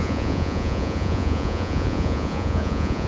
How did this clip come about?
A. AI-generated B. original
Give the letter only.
A